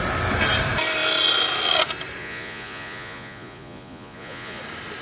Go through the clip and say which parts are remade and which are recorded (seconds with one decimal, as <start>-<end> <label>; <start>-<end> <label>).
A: 0.0-2.2 recorded; 2.2-4.6 remade; 4.6-5.0 recorded